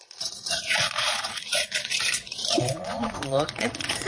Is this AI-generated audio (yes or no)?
yes